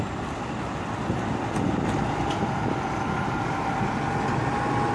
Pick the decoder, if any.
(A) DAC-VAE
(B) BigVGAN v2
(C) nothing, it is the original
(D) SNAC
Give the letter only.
C